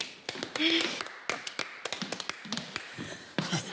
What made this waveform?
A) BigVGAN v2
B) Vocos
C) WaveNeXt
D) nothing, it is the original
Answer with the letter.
D